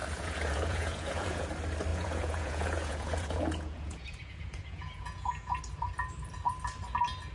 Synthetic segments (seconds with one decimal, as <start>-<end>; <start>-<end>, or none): 0.0-1.5; 1.9-5.6